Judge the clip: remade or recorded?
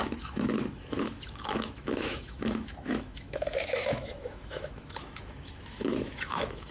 remade